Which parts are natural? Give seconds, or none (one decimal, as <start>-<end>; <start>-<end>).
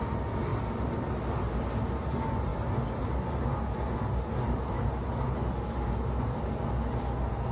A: 0.0-7.5